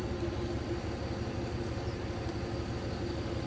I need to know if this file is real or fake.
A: real